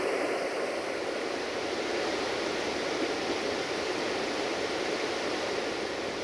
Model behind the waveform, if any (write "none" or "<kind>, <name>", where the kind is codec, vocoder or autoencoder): none